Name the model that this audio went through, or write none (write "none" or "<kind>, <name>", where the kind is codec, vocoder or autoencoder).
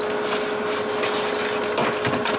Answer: none